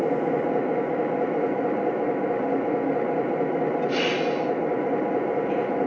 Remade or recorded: recorded